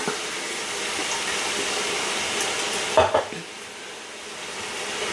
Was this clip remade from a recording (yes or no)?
no